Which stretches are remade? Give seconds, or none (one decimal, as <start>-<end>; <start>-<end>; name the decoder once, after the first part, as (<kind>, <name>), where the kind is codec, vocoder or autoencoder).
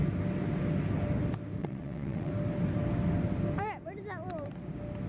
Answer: 1.6-2.3 (vocoder, WaveNeXt)